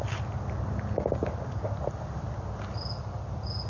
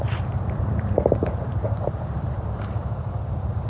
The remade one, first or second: second